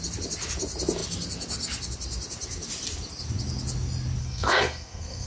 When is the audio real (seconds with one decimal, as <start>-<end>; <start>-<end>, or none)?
0.0-4.2